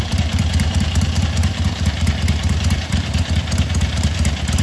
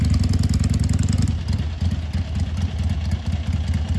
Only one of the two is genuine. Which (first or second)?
second